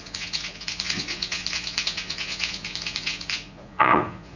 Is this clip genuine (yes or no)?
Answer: no